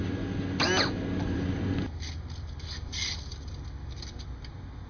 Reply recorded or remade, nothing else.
recorded